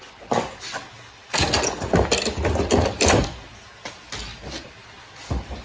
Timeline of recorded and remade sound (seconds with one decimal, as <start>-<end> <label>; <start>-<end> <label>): 0.0-5.6 recorded